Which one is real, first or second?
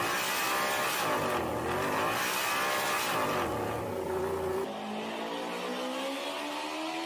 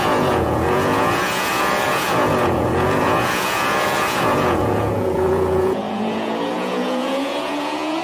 first